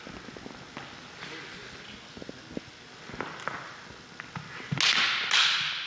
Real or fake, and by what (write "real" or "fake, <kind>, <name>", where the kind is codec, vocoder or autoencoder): real